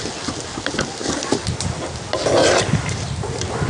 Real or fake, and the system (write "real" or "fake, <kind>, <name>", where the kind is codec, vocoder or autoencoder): real